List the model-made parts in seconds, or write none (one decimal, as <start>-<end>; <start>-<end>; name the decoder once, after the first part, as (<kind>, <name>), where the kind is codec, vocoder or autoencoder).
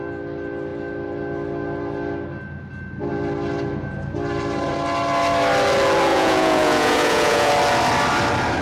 6.1-7.5 (vocoder, Vocos)